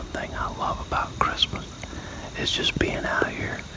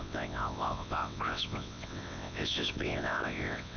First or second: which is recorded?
first